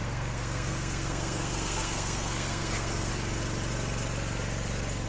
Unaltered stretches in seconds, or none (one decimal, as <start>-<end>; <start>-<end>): 3.1-5.1